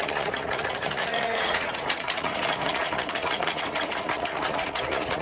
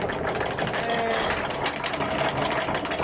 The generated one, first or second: first